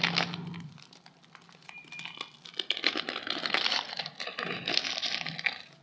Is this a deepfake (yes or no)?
no